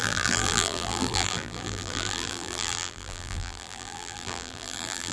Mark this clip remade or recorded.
remade